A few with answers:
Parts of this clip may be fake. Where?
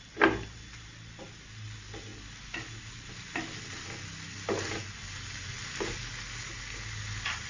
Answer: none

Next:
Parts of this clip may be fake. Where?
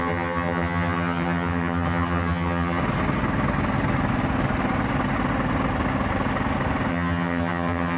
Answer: 0.0-2.8; 6.9-8.0